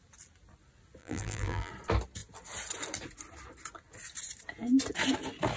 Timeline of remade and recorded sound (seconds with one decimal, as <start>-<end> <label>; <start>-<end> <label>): 0.0-1.0 recorded; 1.0-1.7 remade; 1.7-5.6 recorded